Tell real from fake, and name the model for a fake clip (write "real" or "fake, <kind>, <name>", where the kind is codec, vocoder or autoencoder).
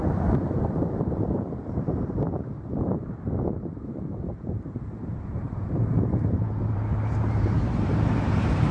fake, vocoder, BigVGAN v2